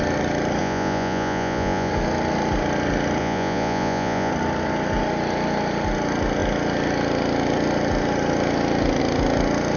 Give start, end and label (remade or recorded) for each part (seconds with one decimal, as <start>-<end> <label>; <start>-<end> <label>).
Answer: 0.0-0.6 recorded; 0.6-1.9 remade; 1.9-3.2 recorded; 3.2-4.3 remade; 4.3-9.8 recorded